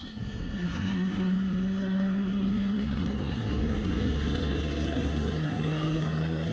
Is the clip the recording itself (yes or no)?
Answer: no